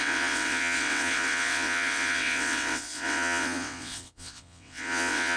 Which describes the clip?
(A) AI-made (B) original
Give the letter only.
A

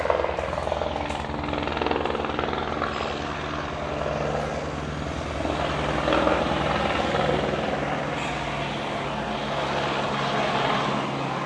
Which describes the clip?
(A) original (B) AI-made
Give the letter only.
A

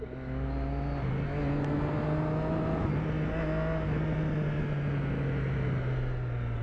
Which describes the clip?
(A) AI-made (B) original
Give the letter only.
B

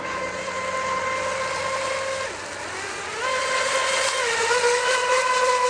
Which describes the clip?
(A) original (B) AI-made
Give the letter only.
A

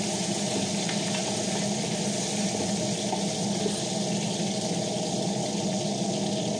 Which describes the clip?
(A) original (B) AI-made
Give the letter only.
A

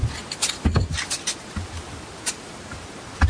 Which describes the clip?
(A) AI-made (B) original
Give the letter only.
B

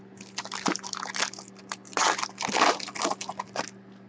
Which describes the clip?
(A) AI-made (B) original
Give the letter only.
B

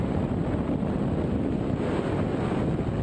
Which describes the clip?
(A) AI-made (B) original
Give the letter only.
B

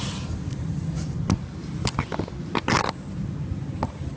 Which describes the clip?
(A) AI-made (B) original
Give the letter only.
B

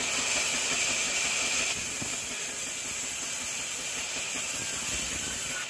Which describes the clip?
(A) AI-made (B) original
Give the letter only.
B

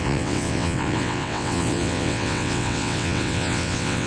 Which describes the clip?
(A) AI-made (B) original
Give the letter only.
A